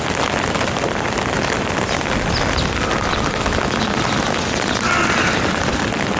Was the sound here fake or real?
real